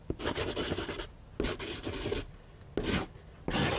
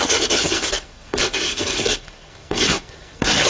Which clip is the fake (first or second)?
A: second